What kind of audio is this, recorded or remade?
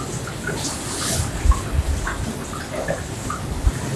recorded